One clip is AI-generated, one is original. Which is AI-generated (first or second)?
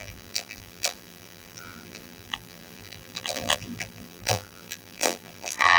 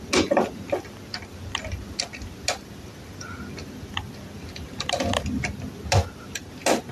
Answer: first